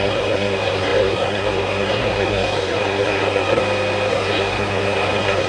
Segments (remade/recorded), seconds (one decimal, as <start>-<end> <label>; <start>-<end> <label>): 0.0-3.6 remade; 3.6-4.1 recorded; 4.1-5.5 remade